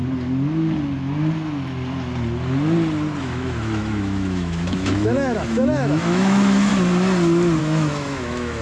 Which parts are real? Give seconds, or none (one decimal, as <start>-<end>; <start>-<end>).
0.0-3.2; 6.7-7.6